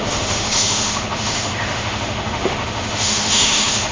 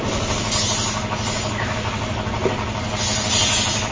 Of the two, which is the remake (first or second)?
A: first